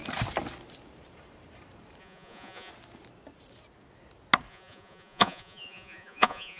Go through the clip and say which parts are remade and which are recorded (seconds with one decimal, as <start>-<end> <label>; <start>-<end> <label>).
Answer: 0.0-2.0 recorded; 2.0-2.7 remade; 2.7-4.5 recorded; 4.5-6.6 remade